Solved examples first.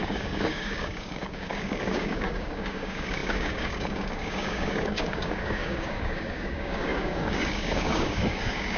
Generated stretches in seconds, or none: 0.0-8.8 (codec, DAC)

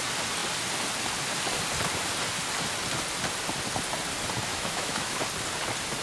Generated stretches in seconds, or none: 4.5-5.2 (autoencoder, DAC-VAE)

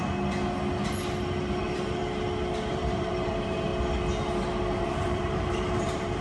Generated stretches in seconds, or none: 1.6-2.0 (vocoder, BigVGAN v2); 2.7-3.7; 4.8-6.2

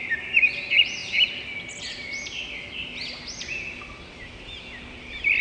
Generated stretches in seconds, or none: none

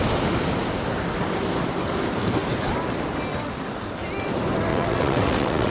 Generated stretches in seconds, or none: 4.7-5.7 (vocoder, WaveNeXt)

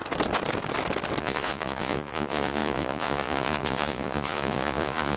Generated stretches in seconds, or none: 1.2-5.2 (vocoder, Vocos)

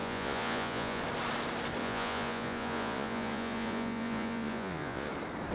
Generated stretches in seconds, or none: 0.0-1.0 (vocoder, Vocos); 1.8-5.1